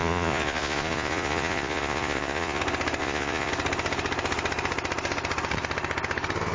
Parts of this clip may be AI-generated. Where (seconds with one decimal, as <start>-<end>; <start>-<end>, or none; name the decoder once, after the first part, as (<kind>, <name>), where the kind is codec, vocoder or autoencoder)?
0.0-2.6 (vocoder, Vocos); 3.0-3.5